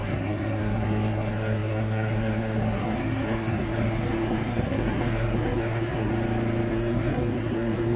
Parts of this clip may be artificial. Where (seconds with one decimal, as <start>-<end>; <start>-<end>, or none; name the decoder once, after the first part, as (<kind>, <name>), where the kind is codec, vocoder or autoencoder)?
0.0-6.1 (codec, SNAC); 6.7-8.0